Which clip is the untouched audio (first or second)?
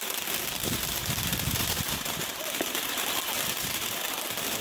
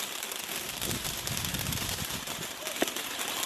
second